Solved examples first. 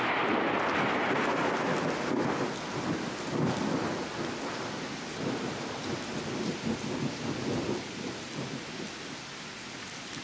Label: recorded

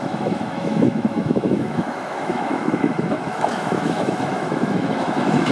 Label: remade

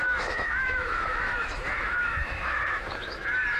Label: remade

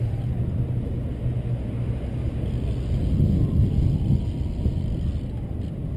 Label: recorded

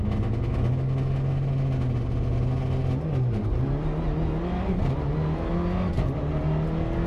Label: recorded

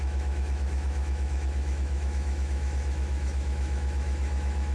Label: remade